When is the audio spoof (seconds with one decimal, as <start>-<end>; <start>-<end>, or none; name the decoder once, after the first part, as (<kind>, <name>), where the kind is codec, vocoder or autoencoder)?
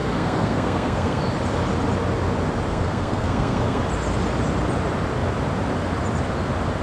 0.0-1.2 (codec, SNAC); 2.7-3.8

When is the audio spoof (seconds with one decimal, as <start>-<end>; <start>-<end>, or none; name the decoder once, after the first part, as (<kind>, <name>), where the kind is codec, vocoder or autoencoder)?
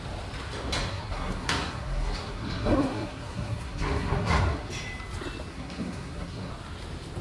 0.9-4.7 (codec, SNAC); 5.5-6.5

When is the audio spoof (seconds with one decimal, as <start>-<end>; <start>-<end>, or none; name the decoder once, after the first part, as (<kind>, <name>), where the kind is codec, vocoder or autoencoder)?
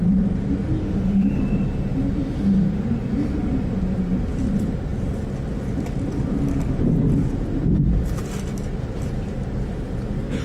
0.8-1.4 (autoencoder, DAC-VAE)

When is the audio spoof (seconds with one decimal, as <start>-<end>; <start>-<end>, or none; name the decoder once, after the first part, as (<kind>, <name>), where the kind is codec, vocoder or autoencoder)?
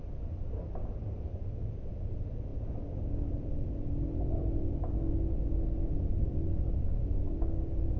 none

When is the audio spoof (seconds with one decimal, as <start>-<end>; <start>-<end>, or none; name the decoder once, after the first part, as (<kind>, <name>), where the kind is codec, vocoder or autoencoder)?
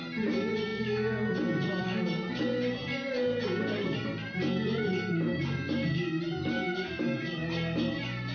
none